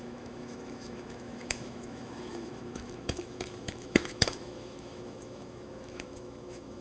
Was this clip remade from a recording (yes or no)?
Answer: yes